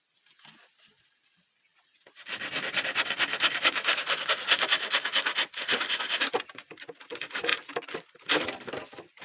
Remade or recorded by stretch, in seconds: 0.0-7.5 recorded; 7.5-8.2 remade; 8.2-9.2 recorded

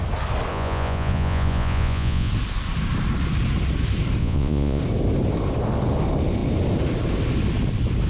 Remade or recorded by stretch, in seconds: 0.0-0.5 recorded; 0.5-2.3 remade; 2.3-4.2 recorded; 4.2-4.8 remade; 4.8-8.1 recorded

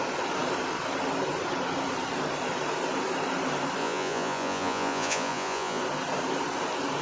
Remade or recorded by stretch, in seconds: 0.0-3.8 recorded; 3.8-5.8 remade; 5.8-7.0 recorded

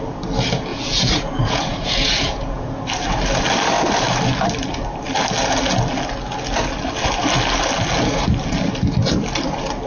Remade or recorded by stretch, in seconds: 0.0-0.7 recorded; 0.7-2.8 remade; 2.8-9.9 recorded

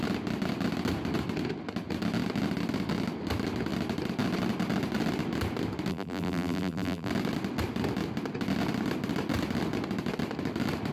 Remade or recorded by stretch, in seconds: 0.0-5.9 recorded; 5.9-7.1 remade; 7.1-10.9 recorded

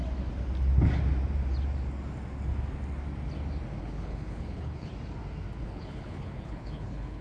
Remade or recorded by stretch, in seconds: 0.0-3.8 recorded; 3.8-4.9 remade; 4.9-5.6 recorded; 5.6-7.2 remade

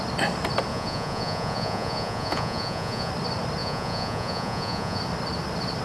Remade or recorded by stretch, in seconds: 0.0-0.7 recorded; 0.7-3.1 remade; 3.1-3.6 recorded; 3.6-5.0 remade; 5.0-5.8 recorded

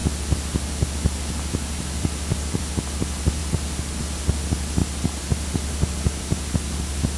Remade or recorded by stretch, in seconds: 0.0-7.2 recorded